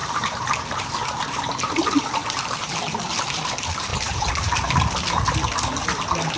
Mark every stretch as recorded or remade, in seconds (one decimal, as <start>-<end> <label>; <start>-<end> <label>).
0.0-2.8 remade; 2.8-3.9 recorded; 3.9-4.7 remade; 4.7-6.4 recorded